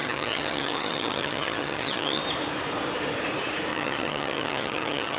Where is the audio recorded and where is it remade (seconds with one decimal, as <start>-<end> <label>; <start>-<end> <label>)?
0.0-2.2 remade; 2.2-3.7 recorded; 3.7-5.2 remade